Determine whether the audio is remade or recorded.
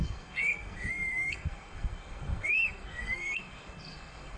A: remade